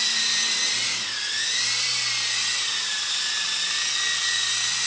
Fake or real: real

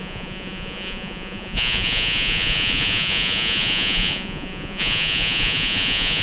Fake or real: fake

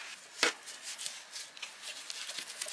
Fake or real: real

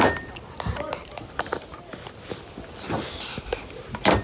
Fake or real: real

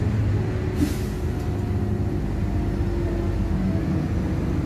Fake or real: real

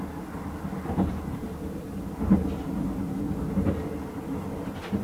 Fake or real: real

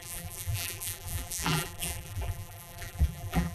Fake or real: fake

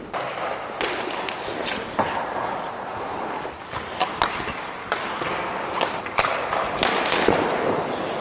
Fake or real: real